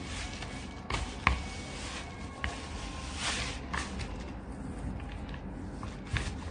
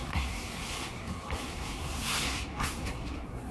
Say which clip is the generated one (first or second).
second